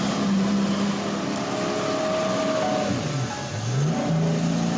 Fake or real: real